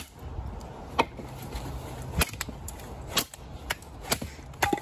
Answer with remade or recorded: recorded